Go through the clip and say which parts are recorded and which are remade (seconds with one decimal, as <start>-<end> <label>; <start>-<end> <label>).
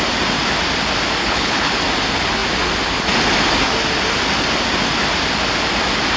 0.0-1.2 recorded; 1.2-1.7 remade; 1.7-6.2 recorded